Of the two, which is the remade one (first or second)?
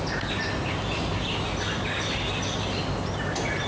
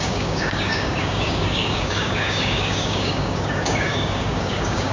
second